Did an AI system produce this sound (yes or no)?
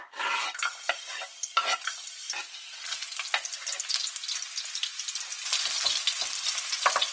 no